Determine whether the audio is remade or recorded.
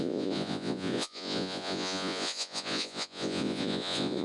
remade